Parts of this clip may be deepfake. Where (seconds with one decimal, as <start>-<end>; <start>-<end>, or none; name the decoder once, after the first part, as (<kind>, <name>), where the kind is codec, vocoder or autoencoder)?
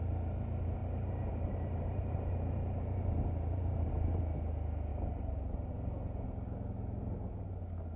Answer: 0.8-4.2 (vocoder, BigVGAN v2); 4.9-5.7